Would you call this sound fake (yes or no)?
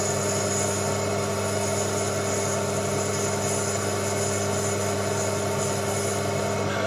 no